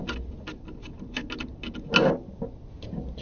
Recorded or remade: recorded